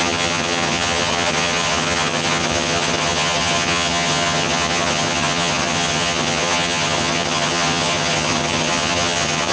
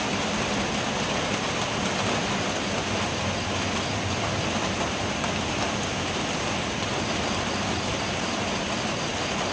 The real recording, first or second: second